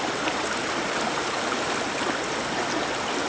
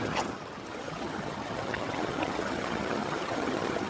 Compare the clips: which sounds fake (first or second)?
second